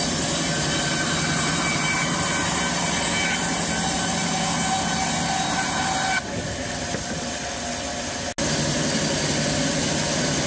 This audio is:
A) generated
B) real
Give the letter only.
B